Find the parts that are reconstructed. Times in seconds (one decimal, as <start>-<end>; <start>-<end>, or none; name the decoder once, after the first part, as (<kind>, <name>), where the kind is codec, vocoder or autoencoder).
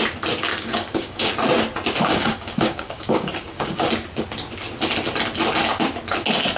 0.5-1.3 (codec, DAC); 2.1-3.9